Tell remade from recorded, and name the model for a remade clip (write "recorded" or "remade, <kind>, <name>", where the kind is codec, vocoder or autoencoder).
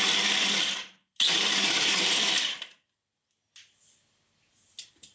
recorded